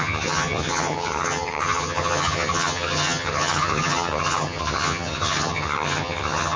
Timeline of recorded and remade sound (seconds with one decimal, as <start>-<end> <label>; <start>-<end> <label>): 0.0-6.6 remade